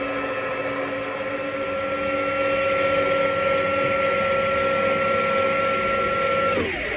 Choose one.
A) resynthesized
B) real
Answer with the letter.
B